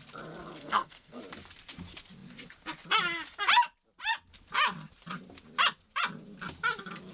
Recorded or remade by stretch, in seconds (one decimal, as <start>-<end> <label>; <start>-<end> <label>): 0.0-0.5 recorded; 0.5-1.2 remade; 1.2-7.1 recorded